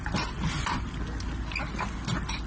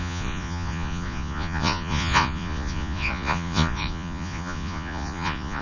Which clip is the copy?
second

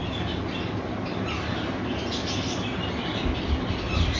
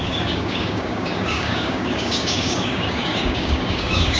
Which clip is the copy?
second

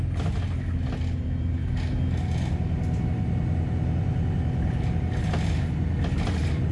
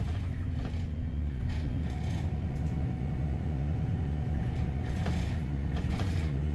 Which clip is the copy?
second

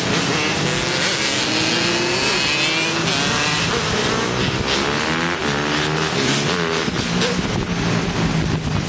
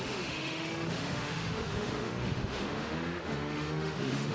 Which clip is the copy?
second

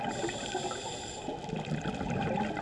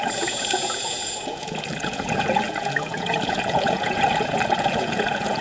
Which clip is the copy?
second